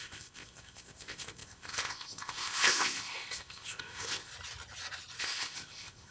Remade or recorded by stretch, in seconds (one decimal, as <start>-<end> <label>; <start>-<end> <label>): 0.0-4.3 remade; 4.3-5.2 recorded; 5.2-6.1 remade